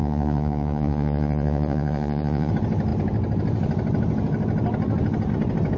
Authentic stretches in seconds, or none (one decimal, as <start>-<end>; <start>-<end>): 2.5-5.8